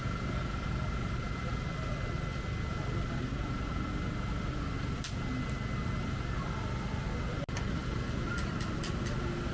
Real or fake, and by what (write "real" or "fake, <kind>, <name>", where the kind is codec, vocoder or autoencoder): real